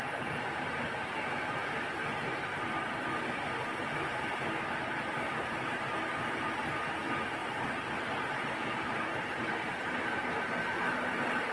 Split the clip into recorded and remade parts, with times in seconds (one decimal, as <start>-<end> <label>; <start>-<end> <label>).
0.0-7.4 recorded; 7.4-9.8 remade; 9.8-11.5 recorded